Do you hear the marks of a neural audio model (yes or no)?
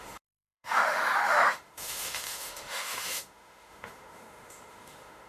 yes